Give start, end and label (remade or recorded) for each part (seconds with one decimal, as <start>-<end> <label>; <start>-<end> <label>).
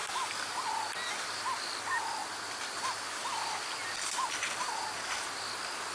0.0-5.9 recorded